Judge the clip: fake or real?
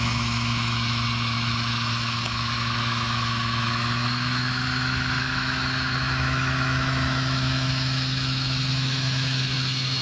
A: fake